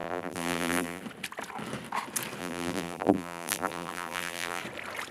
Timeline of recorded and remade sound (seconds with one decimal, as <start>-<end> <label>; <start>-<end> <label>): 0.0-1.0 remade; 1.0-2.4 recorded; 2.4-4.6 remade; 4.6-5.1 recorded

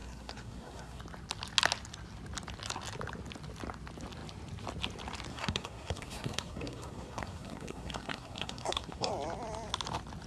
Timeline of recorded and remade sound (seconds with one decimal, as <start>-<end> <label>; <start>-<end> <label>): 0.0-1.0 remade; 1.0-5.3 recorded; 5.3-9.1 remade; 9.1-10.3 recorded

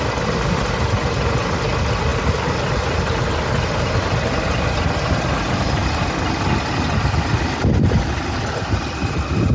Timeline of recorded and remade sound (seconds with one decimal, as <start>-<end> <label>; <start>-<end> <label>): 0.0-9.5 recorded

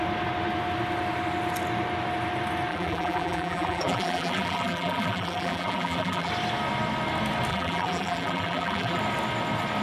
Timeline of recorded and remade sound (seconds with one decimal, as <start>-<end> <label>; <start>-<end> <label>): 0.0-2.7 recorded; 2.7-6.3 remade; 6.3-7.5 recorded; 7.5-9.0 remade; 9.0-9.8 recorded

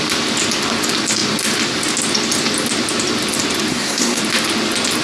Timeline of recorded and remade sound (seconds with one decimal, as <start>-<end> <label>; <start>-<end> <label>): 0.0-3.7 recorded; 3.7-4.2 remade; 4.2-5.0 recorded

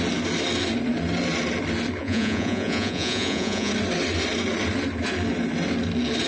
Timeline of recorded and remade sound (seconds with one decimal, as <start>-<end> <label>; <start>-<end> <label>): 0.0-2.0 recorded; 2.0-3.7 remade; 3.7-6.3 recorded

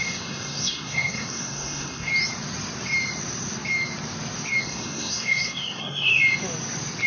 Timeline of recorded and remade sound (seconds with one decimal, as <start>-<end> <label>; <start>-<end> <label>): 0.0-2.1 remade; 2.1-4.6 recorded; 4.6-6.1 remade; 6.1-7.1 recorded

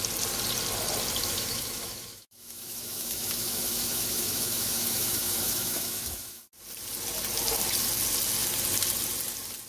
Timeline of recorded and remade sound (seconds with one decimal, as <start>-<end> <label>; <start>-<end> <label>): 0.0-1.2 recorded; 1.2-6.4 remade; 6.4-9.7 recorded